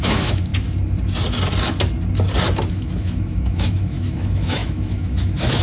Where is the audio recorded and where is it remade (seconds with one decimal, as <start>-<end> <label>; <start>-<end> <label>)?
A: 0.0-0.5 remade; 0.5-2.7 recorded; 2.7-5.6 remade